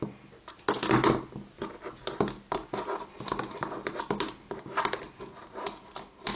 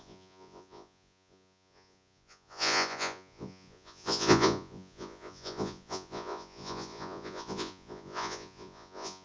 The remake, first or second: second